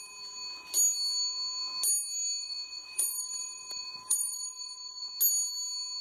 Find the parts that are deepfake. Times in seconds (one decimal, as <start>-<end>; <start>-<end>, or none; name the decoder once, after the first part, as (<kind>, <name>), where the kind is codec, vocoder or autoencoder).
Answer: 2.4-5.1 (vocoder, Vocos)